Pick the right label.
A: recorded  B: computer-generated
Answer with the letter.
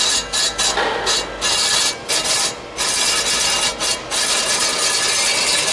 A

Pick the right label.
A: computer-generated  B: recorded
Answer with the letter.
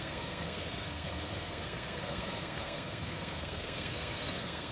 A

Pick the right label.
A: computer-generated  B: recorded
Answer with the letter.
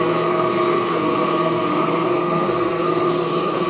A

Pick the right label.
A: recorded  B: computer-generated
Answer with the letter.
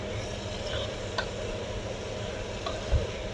A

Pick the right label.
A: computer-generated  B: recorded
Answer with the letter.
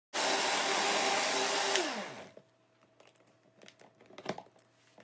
B